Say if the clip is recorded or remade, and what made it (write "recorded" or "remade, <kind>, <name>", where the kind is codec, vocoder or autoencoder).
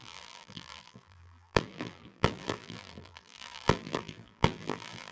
remade, vocoder, BigVGAN v2